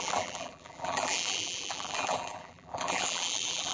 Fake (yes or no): yes